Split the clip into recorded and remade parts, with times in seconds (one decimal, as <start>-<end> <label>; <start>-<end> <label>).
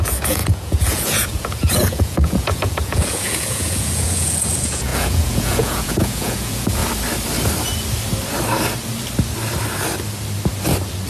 0.0-6.8 remade; 6.8-11.1 recorded